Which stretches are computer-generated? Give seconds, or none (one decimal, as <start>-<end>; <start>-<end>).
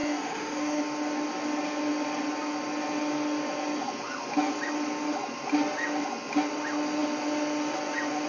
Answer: 0.0-0.8